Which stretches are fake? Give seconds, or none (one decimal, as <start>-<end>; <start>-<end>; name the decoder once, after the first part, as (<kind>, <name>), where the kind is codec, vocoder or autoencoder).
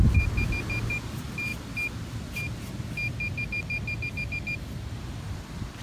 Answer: none